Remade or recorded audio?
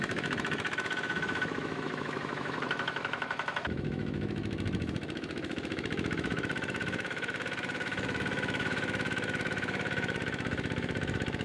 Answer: remade